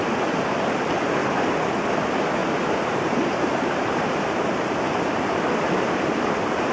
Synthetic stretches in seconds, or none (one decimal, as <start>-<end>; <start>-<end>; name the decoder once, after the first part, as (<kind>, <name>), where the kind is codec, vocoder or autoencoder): 2.4-5.8 (vocoder, BigVGAN v2)